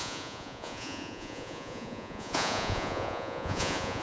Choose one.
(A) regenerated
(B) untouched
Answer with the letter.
A